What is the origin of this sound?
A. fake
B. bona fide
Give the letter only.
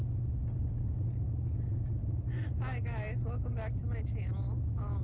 B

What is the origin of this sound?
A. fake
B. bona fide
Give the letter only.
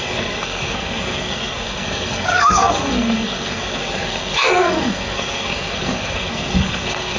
A